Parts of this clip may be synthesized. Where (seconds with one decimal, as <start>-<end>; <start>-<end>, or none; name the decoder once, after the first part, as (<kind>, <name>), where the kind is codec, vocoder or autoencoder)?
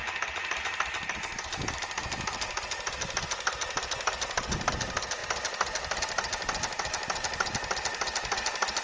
none